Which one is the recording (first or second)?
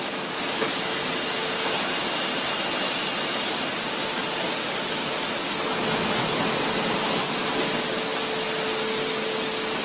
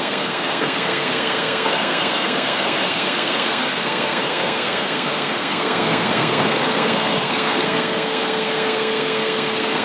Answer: first